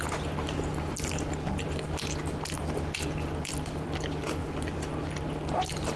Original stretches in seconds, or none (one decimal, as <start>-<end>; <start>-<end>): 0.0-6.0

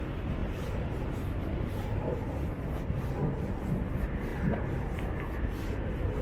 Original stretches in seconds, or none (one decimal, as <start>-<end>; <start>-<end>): 0.0-0.4; 3.1-6.2

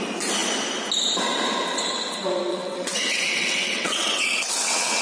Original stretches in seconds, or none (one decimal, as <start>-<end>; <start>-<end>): 0.0-2.5

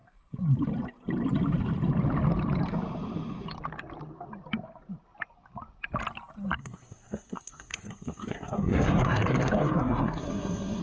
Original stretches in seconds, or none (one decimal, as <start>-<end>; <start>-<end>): 0.0-6.6

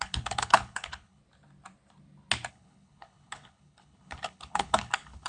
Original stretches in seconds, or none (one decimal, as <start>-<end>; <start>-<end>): 1.2-2.5